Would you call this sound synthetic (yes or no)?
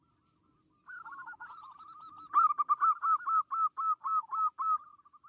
no